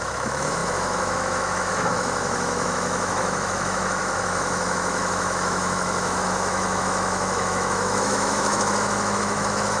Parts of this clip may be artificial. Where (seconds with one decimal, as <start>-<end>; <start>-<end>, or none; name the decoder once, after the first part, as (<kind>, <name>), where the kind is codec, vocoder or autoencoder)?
0.0-9.8 (autoencoder, DAC-VAE)